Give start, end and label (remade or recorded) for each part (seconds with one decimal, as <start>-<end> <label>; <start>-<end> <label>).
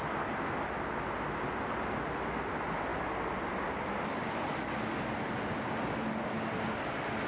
0.0-7.3 recorded